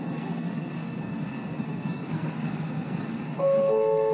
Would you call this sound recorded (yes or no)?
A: no